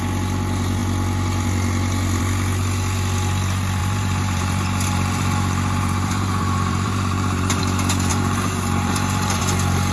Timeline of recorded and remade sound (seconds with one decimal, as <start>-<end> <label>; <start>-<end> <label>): 0.0-3.8 recorded; 3.8-7.6 remade; 7.6-8.1 recorded; 8.1-9.4 remade; 9.4-9.9 recorded